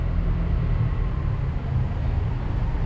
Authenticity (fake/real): real